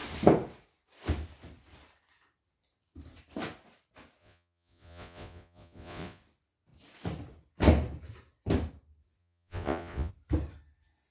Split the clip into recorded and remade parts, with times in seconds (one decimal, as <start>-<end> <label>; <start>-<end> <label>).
0.0-4.2 recorded; 4.2-6.2 remade; 6.2-9.2 recorded; 9.2-10.1 remade; 10.1-11.1 recorded